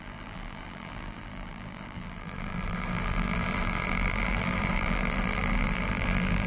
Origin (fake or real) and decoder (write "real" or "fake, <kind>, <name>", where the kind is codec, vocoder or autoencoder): fake, vocoder, BigVGAN v2